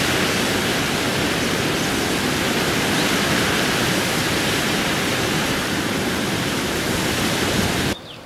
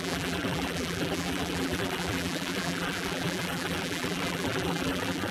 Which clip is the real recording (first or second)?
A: first